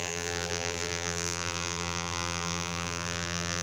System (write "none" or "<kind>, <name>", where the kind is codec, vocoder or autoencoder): vocoder, BigVGAN v2